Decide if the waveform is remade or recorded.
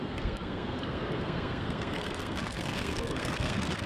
remade